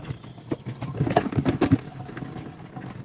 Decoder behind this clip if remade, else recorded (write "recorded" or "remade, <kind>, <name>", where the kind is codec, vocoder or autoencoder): recorded